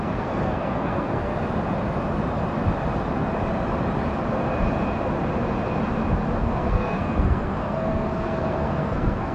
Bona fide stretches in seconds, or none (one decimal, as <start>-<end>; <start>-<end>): 1.3-6.4